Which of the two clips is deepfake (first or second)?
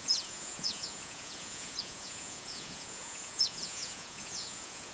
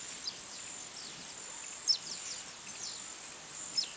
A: first